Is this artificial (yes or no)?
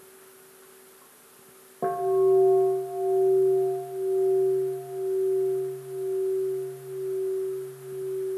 no